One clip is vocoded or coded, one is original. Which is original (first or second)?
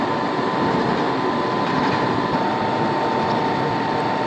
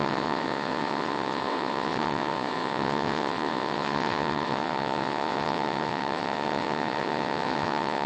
first